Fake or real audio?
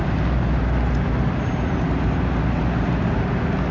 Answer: real